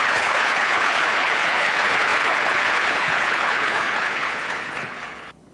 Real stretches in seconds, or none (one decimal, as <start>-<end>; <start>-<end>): none